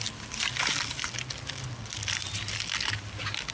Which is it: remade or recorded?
recorded